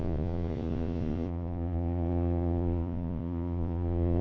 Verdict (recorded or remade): remade